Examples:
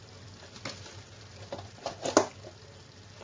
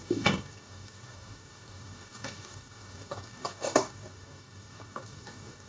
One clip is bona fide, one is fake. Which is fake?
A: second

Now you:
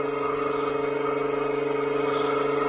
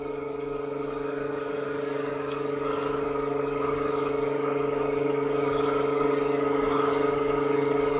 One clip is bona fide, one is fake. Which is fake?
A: second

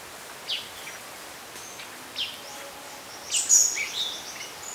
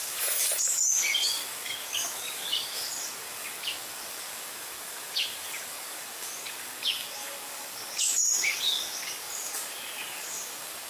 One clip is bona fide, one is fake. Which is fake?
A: second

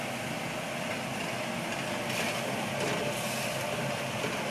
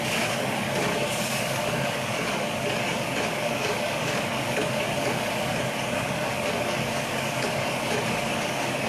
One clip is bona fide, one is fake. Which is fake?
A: second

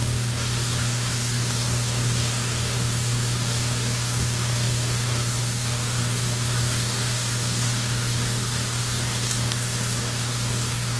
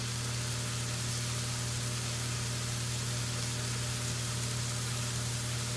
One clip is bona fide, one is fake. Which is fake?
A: first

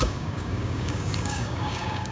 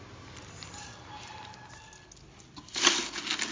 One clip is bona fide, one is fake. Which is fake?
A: first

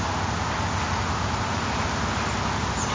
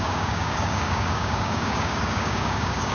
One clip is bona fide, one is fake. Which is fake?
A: second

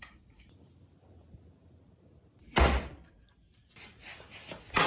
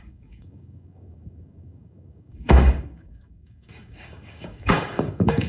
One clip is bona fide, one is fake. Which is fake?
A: second